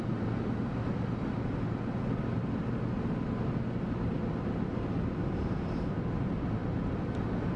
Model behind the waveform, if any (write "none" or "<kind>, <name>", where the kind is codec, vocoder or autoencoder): none